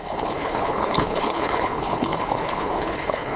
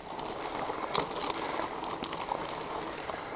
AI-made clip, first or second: first